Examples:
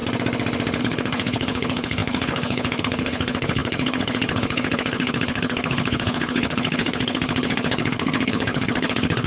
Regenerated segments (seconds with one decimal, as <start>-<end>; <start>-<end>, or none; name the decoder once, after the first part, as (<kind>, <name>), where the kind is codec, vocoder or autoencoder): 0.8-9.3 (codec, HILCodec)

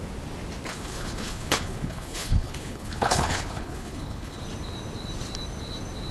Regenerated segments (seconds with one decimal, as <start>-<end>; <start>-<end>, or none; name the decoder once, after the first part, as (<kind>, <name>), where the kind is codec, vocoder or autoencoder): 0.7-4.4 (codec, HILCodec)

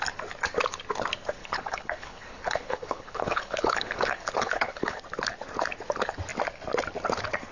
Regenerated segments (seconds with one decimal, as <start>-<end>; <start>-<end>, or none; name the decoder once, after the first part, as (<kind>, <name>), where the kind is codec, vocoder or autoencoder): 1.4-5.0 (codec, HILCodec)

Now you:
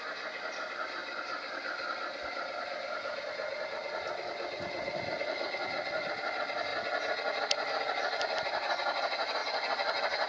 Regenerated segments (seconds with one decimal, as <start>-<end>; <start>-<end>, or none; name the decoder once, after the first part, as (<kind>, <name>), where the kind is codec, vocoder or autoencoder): none